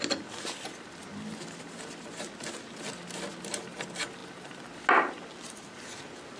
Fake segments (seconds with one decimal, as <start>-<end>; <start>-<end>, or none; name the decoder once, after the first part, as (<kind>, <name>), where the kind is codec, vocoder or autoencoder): none